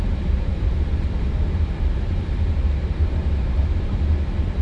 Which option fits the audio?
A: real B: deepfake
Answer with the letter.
B